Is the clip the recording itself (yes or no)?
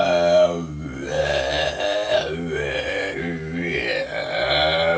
yes